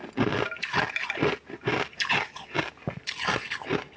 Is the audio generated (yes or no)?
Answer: no